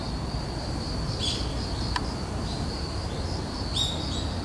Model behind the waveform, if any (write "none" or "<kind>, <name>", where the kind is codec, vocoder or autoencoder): none